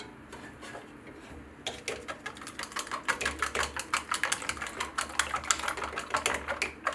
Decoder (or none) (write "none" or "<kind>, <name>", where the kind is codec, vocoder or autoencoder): none